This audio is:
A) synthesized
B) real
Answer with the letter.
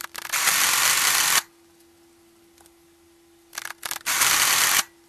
B